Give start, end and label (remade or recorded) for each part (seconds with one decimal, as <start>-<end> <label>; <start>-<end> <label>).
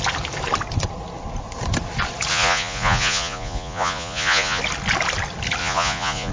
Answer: 0.0-2.3 recorded; 2.3-4.6 remade; 4.6-5.6 recorded; 5.6-6.3 remade